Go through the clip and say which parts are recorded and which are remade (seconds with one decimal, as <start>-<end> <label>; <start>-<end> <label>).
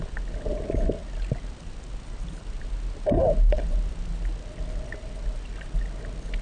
0.0-6.4 recorded